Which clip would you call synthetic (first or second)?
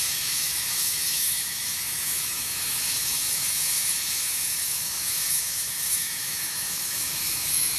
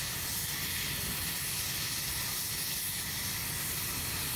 first